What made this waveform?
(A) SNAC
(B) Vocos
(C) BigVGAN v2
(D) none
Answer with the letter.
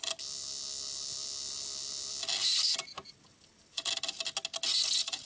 D